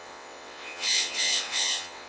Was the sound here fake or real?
fake